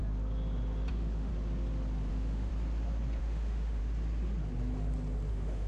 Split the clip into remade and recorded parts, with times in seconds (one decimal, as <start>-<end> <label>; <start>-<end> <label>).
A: 0.0-0.9 recorded; 0.9-1.3 remade; 1.3-2.1 recorded; 2.1-2.5 remade; 2.5-3.2 recorded; 3.2-3.8 remade; 3.8-5.3 recorded; 5.3-5.7 remade